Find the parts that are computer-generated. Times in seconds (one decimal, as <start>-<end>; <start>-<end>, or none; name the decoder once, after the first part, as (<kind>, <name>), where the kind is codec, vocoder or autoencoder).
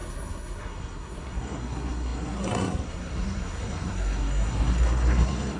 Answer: 0.0-5.6 (codec, SNAC)